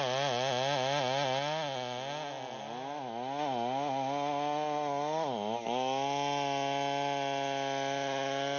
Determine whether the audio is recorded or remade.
recorded